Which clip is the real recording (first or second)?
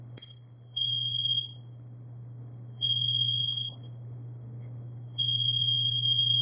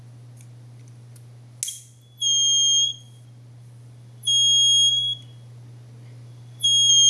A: second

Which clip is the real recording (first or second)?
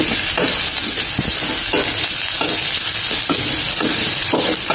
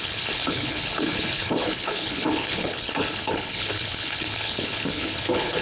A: first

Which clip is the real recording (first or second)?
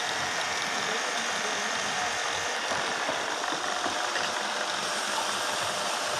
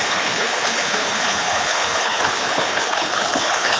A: first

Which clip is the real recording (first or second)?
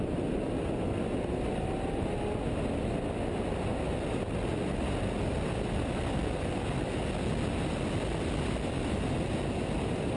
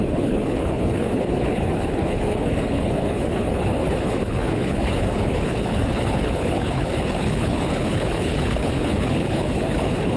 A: first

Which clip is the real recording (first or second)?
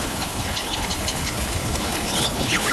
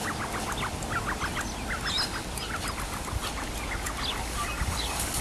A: second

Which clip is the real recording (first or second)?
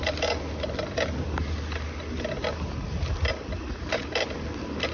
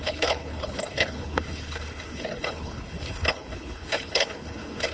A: first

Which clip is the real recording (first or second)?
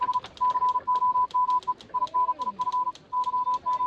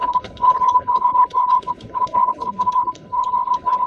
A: first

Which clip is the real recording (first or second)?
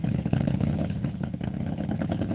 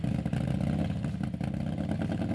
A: second